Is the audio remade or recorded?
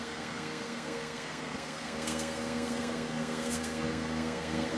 remade